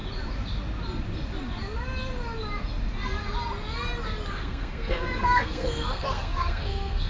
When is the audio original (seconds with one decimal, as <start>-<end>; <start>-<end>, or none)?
0.0-4.3